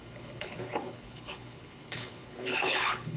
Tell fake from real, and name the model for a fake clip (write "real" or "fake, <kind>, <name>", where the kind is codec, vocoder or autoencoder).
fake, codec, HILCodec